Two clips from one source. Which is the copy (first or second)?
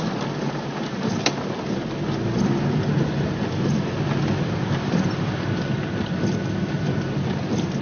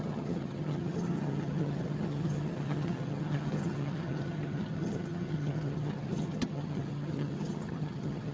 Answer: second